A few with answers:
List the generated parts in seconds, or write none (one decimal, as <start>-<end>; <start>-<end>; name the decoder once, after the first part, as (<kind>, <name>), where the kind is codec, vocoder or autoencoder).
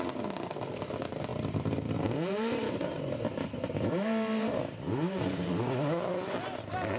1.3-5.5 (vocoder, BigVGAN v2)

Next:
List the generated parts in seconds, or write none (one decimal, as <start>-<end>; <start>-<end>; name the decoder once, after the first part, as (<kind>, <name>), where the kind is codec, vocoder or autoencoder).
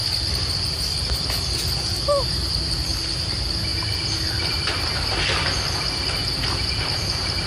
none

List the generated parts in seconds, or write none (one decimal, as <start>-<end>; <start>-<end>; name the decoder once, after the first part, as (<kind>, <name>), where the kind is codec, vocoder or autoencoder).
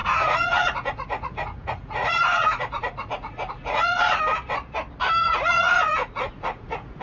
0.0-4.2 (vocoder, Vocos); 5.2-7.0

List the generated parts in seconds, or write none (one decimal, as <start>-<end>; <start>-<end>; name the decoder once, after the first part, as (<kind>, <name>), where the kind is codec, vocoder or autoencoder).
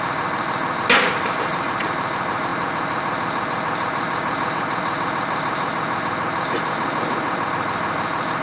none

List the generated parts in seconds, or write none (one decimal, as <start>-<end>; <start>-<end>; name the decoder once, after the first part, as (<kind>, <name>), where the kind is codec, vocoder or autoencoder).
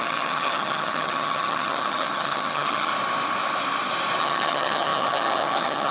0.0-2.9 (vocoder, HiFi-GAN); 4.2-5.9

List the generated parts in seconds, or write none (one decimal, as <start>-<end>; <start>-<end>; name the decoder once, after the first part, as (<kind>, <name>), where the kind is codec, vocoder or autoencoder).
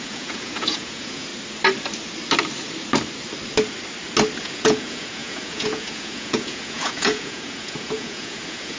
0.0-1.3 (vocoder, Vocos); 4.4-8.8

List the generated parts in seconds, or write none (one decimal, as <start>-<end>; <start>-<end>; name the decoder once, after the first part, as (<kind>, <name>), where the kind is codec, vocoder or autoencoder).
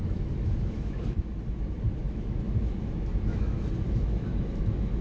0.0-1.2 (autoencoder, DAC-VAE); 2.0-5.0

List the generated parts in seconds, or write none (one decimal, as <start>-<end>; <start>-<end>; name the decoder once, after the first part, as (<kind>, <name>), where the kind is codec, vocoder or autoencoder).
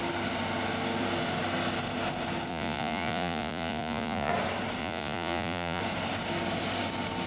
2.5-4.3 (vocoder, Vocos); 4.8-5.8